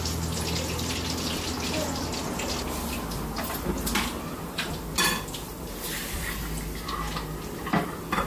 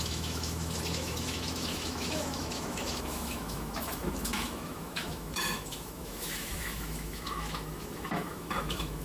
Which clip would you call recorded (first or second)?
first